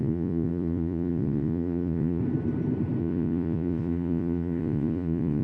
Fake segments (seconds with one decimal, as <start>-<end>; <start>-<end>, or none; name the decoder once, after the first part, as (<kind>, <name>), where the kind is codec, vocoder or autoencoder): 0.0-2.2 (vocoder, Vocos); 3.0-5.4